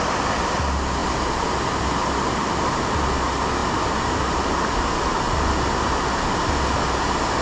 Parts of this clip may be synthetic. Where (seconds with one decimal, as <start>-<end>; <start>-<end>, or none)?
none